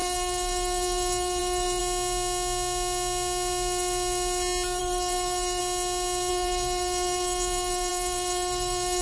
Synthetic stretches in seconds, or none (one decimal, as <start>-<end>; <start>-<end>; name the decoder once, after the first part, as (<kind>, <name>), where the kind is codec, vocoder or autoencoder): 0.0-1.8 (codec, SNAC); 4.8-5.6; 6.3-9.0